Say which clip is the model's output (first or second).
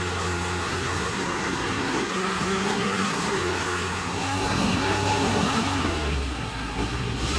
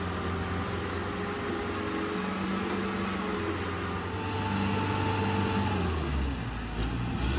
first